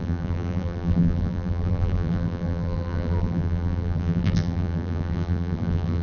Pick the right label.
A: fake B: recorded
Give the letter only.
A